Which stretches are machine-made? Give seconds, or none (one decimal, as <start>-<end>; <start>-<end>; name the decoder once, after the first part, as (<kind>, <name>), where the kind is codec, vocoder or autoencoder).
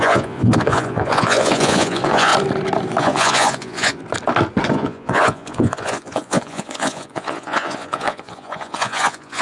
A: 0.0-2.3 (vocoder, Vocos); 3.0-4.0; 4.7-9.4